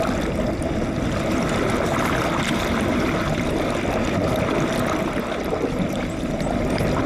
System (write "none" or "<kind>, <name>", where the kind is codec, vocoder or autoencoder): none